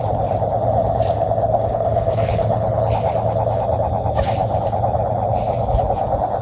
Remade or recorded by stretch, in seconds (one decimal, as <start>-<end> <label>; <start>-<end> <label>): 0.0-1.4 recorded; 1.4-2.9 remade; 2.9-6.4 recorded